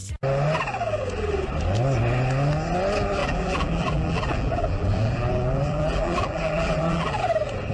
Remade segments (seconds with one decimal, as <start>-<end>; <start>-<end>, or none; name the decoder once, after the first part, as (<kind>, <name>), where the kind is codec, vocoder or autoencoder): 3.2-7.2 (vocoder, BigVGAN v2)